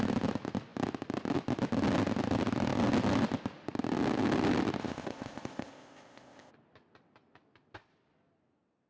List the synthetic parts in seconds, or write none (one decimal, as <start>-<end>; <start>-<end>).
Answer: 4.8-6.5